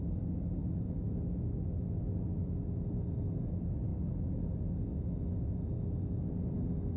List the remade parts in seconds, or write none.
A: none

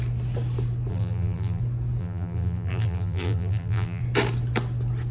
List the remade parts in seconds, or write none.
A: 0.9-1.6 (vocoder, BigVGAN v2); 2.0-4.0

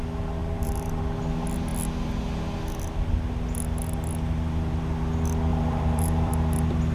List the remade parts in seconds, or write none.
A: 0.4-1.0 (vocoder, BigVGAN v2); 5.5-6.3

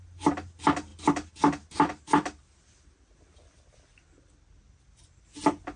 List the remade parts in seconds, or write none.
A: none

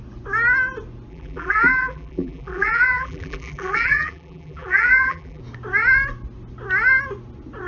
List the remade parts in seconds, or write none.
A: 1.1-5.4 (vocoder, BigVGAN v2)

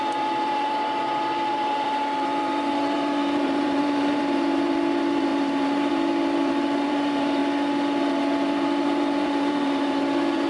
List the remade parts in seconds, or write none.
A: 0.0-7.4 (vocoder, BigVGAN v2); 8.0-10.5

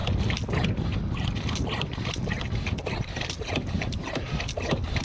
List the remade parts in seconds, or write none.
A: none